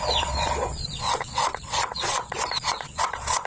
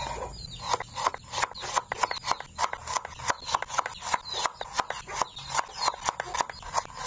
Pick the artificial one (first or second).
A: first